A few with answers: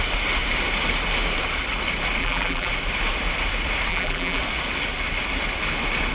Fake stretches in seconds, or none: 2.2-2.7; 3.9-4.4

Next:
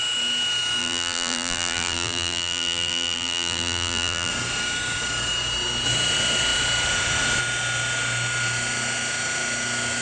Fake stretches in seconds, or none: 0.8-4.3

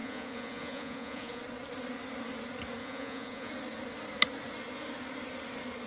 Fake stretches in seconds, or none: 0.0-1.4; 2.8-3.5